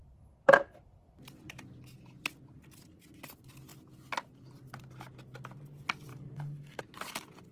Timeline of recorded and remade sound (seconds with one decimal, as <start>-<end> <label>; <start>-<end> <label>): 0.0-6.1 recorded; 6.1-6.8 remade; 6.8-7.5 recorded